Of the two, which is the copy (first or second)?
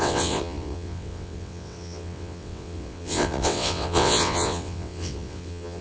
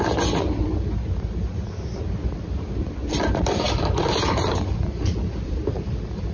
first